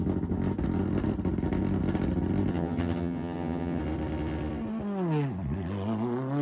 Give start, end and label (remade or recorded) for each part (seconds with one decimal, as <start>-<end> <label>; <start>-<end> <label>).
0.0-2.5 recorded; 2.5-3.8 remade; 3.8-6.4 recorded